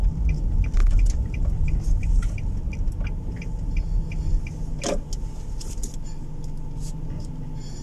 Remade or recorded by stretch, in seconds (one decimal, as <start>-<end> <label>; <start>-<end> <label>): 0.0-7.8 recorded